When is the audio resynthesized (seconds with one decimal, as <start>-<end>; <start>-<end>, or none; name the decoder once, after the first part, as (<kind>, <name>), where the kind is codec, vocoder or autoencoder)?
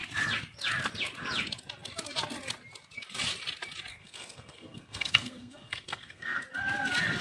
3.9-6.4 (codec, SNAC)